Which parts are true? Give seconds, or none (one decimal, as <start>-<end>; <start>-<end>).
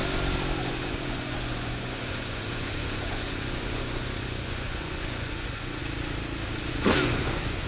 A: 0.0-0.6; 5.8-6.7